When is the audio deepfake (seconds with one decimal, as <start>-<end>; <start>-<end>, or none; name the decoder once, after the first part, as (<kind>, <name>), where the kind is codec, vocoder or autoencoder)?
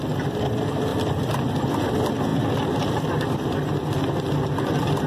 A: 0.9-1.9 (vocoder, BigVGAN v2)